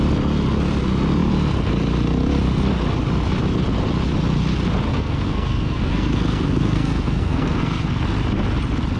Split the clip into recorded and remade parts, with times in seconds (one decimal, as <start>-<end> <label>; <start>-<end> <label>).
0.0-4.9 recorded; 4.9-7.9 remade; 7.9-9.0 recorded